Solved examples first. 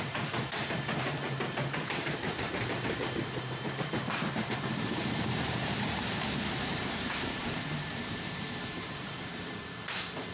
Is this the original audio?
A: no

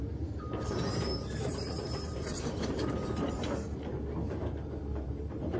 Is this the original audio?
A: no